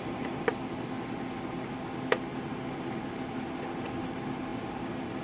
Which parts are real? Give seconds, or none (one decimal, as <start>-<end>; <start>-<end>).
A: 0.0-5.2